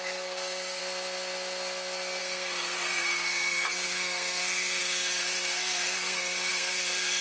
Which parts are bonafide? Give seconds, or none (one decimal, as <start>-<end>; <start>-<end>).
0.8-2.2